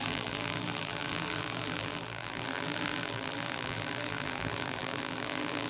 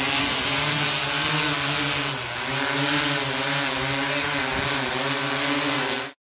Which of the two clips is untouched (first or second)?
second